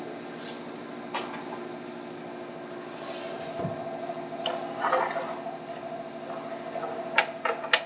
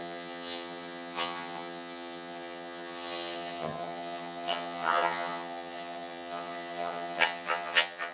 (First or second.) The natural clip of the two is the first